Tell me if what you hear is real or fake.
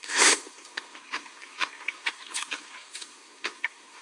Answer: fake